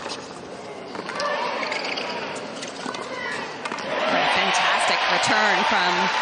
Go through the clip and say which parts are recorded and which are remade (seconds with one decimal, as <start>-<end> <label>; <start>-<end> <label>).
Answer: 0.0-4.2 recorded; 4.2-4.8 remade; 4.8-6.2 recorded